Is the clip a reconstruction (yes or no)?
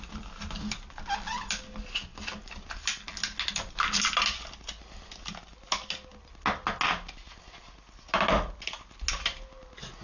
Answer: no